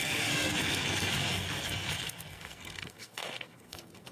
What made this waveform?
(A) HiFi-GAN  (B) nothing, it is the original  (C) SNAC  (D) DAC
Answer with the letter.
C